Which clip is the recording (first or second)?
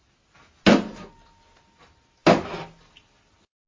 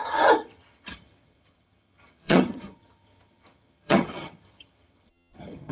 first